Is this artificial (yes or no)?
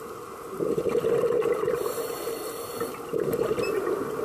no